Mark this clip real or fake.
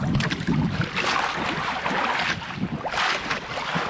real